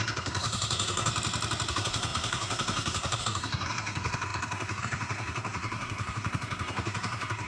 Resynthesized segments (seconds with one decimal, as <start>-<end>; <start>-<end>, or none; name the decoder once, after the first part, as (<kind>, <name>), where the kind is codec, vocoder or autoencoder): 0.0-1.1 (codec, SNAC); 1.7-7.5

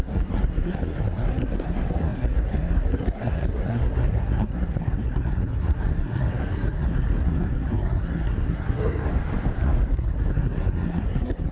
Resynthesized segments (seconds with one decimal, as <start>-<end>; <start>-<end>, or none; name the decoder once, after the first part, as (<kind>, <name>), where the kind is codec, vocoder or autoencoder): 0.0-9.1 (codec, SNAC); 9.6-11.5

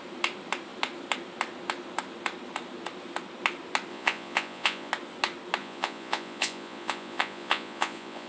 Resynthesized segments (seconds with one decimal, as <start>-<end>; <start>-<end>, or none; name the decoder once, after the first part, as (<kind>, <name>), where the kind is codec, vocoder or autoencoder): 3.9-4.9 (vocoder, Vocos); 5.6-8.3

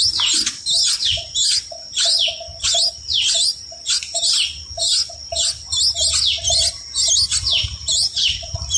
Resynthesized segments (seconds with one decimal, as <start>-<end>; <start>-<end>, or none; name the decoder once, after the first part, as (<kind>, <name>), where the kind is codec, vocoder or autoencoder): 8.0-8.8 (vocoder, BigVGAN v2)

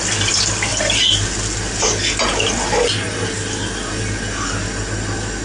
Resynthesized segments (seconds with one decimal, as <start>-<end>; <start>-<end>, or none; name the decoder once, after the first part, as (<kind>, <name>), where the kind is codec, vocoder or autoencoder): none